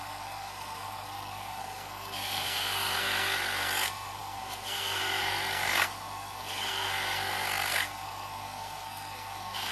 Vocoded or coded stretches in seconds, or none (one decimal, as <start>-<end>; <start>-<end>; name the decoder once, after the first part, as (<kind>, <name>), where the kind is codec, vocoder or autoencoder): 0.0-9.7 (codec, SNAC)